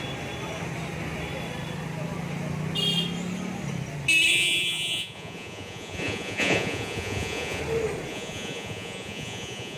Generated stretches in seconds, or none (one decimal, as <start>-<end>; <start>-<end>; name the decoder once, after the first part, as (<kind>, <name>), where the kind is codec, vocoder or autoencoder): 4.3-7.6 (vocoder, Vocos); 8.1-9.8